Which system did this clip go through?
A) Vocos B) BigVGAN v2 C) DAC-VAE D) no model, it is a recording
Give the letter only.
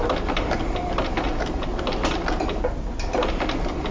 D